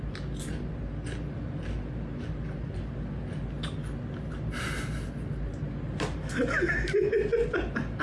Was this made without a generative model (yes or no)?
yes